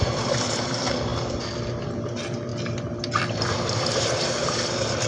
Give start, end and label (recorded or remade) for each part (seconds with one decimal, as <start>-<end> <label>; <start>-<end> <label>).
0.0-5.1 recorded